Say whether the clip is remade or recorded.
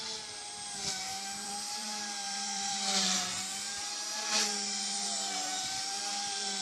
remade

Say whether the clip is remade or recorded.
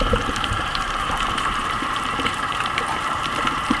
remade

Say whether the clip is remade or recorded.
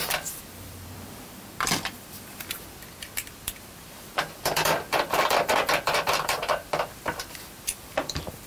remade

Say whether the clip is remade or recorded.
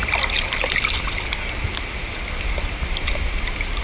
recorded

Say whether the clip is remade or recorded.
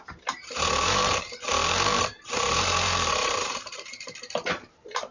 remade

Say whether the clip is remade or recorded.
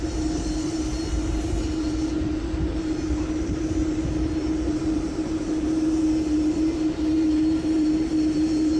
remade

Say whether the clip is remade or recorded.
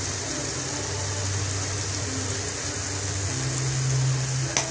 recorded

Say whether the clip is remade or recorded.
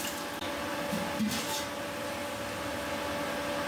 recorded